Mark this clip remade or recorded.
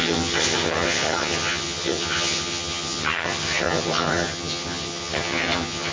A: remade